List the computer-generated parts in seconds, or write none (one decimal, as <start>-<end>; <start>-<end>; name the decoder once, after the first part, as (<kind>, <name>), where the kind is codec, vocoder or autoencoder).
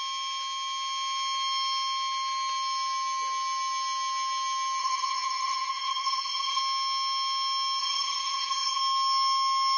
4.8-6.6 (vocoder, HiFi-GAN); 7.8-8.8